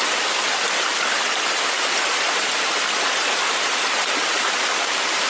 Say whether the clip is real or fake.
real